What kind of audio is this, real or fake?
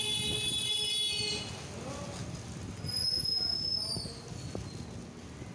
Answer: real